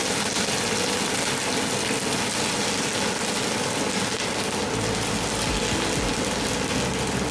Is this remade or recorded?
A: recorded